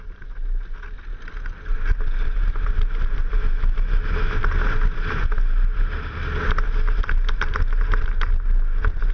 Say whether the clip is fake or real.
real